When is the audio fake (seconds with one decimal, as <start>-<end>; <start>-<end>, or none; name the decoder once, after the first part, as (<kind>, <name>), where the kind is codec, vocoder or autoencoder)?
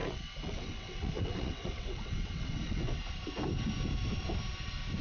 0.0-3.0 (vocoder, WaveNeXt)